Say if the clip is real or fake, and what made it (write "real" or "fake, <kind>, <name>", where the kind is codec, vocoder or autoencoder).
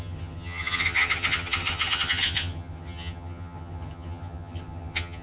fake, vocoder, HiFi-GAN